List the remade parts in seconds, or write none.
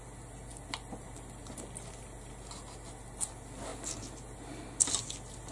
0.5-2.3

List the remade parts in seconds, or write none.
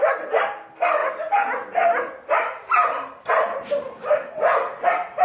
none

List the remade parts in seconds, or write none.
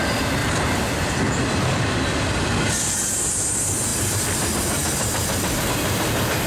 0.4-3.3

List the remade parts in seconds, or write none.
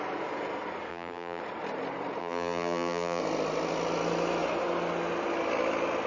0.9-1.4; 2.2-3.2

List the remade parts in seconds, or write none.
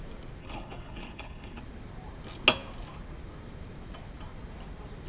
0.4-1.6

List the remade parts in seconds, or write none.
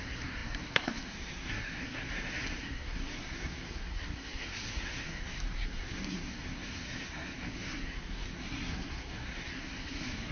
0.0-10.3